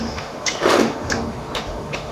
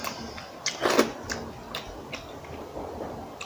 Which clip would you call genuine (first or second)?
second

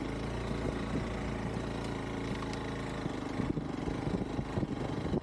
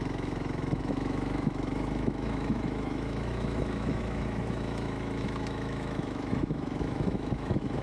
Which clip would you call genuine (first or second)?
first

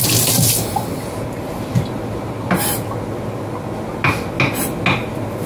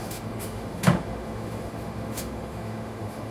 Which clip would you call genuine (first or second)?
first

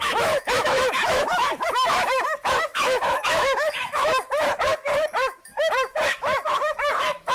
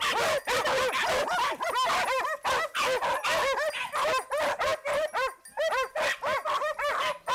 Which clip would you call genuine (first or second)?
second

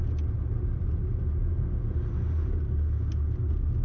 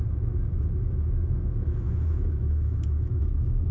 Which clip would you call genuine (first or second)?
first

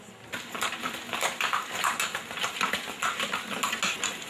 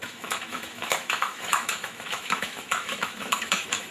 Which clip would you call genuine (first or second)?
first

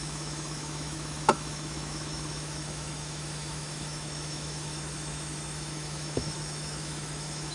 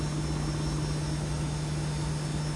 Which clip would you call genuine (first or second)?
second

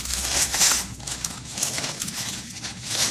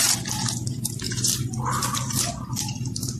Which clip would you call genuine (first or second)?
second